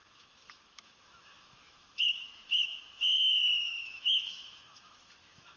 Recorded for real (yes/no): no